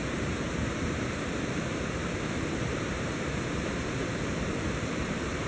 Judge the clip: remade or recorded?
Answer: remade